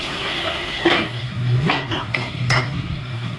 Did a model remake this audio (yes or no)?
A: yes